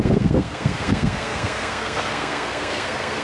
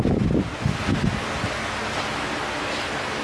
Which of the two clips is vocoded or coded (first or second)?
first